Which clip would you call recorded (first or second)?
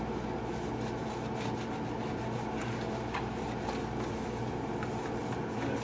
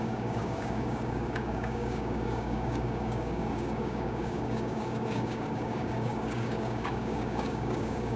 first